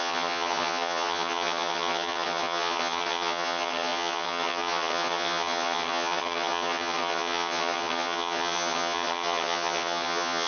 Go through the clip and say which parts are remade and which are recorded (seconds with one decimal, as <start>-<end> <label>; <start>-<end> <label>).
0.0-10.5 remade

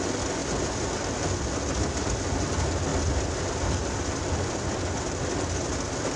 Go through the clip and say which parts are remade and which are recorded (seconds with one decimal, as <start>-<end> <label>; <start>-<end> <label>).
0.0-0.4 recorded; 0.4-1.0 remade; 1.0-6.2 recorded

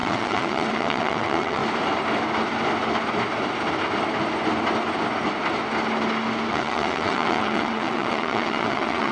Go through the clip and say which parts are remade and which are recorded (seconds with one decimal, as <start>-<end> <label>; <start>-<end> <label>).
0.0-1.6 remade; 1.6-6.5 recorded; 6.5-9.1 remade

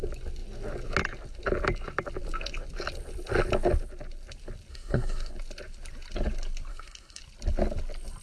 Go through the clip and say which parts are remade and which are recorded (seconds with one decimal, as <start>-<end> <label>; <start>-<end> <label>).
0.0-4.7 recorded; 4.7-5.3 remade; 5.3-6.7 recorded; 6.7-7.2 remade; 7.2-8.2 recorded

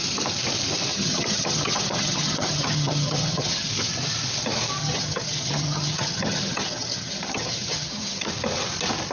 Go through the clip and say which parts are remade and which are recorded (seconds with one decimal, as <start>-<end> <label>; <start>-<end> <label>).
0.0-0.9 recorded; 0.9-3.7 remade; 3.7-4.8 recorded; 4.8-8.3 remade; 8.3-9.1 recorded